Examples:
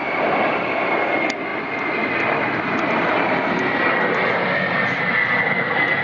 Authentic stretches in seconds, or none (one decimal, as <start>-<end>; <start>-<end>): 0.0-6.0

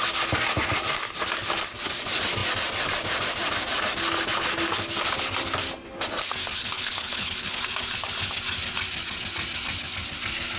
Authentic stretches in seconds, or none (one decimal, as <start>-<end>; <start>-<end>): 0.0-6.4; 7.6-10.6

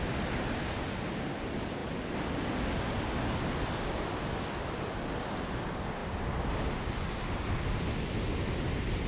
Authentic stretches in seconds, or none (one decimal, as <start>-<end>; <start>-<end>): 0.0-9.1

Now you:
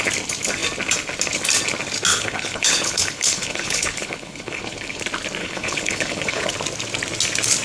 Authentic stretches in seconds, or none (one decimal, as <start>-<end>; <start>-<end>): 0.0-2.1; 5.0-5.4; 6.5-7.6

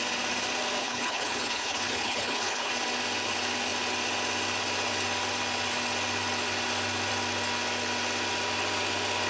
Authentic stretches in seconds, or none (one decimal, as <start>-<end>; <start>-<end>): 0.0-0.8; 2.7-9.3